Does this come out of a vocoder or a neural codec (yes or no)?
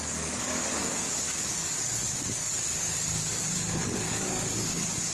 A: yes